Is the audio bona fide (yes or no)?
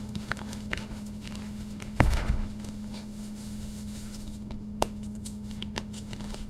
no